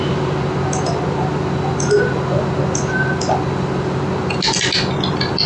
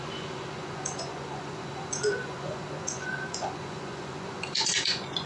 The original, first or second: first